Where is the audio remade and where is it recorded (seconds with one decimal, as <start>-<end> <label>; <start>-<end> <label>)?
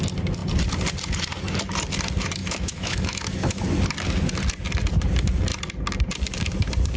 0.0-2.4 recorded; 2.4-3.6 remade; 3.6-7.0 recorded